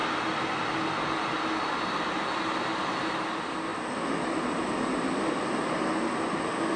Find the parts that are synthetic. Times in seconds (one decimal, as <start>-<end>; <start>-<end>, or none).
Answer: none